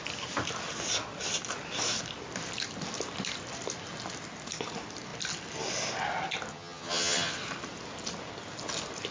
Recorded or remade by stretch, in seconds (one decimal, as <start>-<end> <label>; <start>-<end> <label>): 0.0-6.5 recorded; 6.5-7.3 remade; 7.3-9.1 recorded